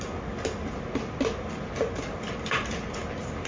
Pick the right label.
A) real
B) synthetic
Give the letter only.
A